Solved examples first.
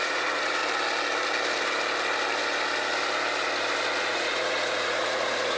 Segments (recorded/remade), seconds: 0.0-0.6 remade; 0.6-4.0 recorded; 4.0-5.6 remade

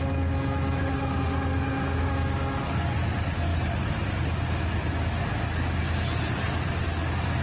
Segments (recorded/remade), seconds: 0.0-0.8 recorded; 0.8-2.1 remade; 2.1-7.4 recorded

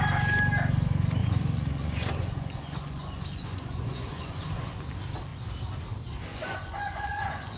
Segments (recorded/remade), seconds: 0.0-1.2 recorded; 1.2-4.7 remade; 4.7-6.3 recorded; 6.3-7.6 remade

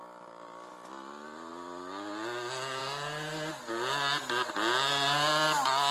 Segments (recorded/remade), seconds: 0.0-5.9 recorded

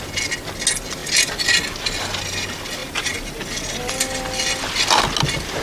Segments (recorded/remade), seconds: 0.0-2.8 recorded; 2.8-3.3 remade; 3.3-5.6 recorded

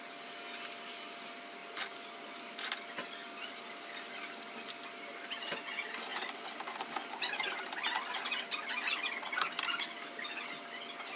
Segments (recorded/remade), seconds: 0.0-11.2 recorded

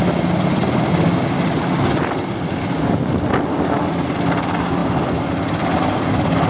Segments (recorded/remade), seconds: 0.0-6.5 recorded

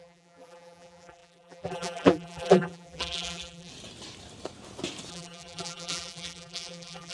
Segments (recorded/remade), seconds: 0.0-3.7 remade; 3.7-5.1 recorded; 5.1-7.1 remade